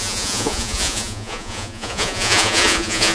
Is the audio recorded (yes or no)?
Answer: no